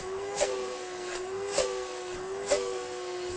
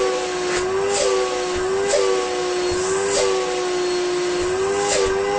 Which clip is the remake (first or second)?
first